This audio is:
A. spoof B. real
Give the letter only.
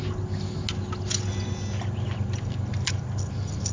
B